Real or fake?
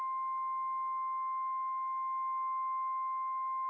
real